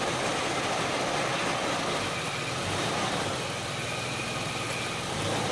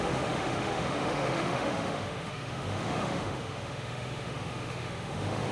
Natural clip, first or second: first